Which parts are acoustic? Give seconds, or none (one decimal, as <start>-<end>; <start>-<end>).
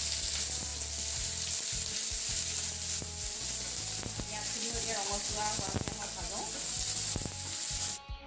0.0-8.3